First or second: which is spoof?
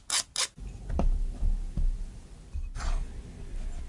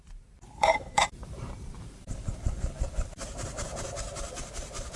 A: second